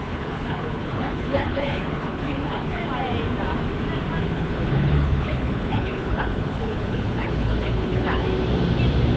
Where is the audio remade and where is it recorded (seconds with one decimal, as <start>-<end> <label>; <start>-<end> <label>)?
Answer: 0.0-2.8 remade; 2.8-4.2 recorded; 4.2-8.2 remade; 8.2-9.2 recorded